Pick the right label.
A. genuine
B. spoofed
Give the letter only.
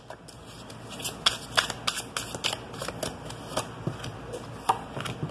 A